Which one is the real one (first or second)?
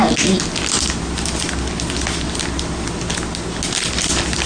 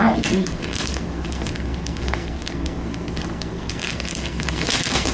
first